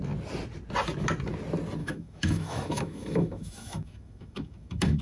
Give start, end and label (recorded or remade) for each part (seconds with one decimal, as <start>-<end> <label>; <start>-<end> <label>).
0.0-1.8 recorded; 1.8-5.0 remade